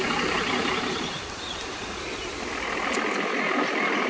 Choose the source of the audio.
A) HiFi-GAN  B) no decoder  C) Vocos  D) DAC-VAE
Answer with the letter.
B